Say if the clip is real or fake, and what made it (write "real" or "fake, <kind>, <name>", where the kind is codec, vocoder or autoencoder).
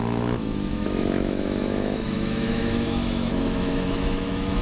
fake, autoencoder, DAC-VAE